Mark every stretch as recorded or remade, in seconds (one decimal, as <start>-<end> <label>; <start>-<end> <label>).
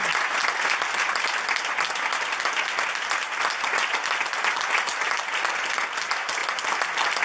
0.0-7.2 recorded